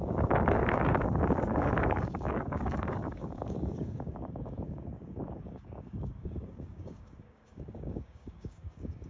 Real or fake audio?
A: fake